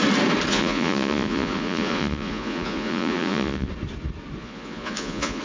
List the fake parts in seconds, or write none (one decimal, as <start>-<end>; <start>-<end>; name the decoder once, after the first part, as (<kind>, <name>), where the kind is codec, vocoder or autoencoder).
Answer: 0.5-3.7 (vocoder, Vocos); 4.4-5.4